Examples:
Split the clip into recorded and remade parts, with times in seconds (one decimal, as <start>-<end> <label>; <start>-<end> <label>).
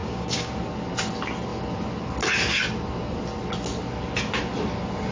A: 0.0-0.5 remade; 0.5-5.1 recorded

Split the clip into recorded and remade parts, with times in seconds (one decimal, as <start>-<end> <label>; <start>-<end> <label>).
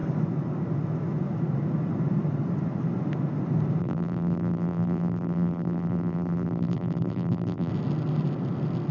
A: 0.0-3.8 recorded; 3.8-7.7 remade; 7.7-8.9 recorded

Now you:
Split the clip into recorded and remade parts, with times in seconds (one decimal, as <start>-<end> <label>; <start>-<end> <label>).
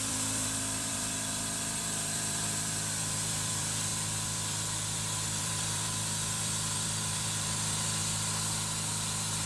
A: 0.0-8.0 remade; 8.0-9.5 recorded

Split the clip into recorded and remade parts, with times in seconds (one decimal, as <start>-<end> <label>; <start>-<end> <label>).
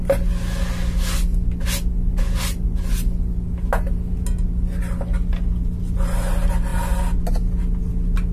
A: 0.0-8.3 recorded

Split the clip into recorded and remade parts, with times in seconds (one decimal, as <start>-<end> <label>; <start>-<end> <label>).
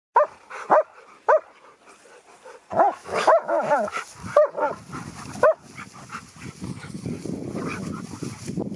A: 0.0-3.0 recorded; 3.0-3.7 remade; 3.7-8.8 recorded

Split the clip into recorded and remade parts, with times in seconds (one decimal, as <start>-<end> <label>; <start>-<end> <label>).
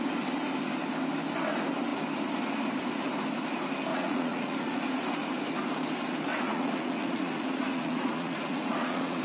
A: 0.0-3.9 recorded; 3.9-4.8 remade; 4.8-6.3 recorded; 6.3-9.2 remade